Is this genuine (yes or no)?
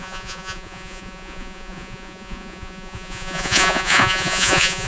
no